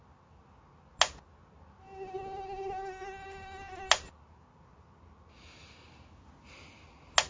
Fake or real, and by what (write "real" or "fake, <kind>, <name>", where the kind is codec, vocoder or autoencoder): real